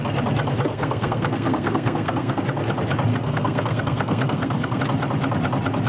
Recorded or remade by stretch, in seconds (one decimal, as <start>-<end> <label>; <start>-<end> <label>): 0.0-0.7 recorded; 0.7-2.4 remade; 2.4-3.1 recorded; 3.1-4.8 remade; 4.8-5.9 recorded